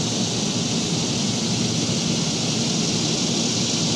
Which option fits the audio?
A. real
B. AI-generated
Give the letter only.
A